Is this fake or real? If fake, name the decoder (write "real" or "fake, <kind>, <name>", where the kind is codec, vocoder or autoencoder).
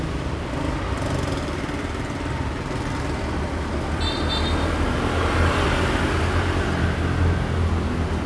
real